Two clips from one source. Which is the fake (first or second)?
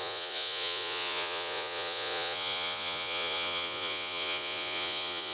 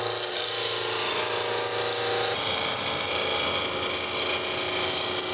first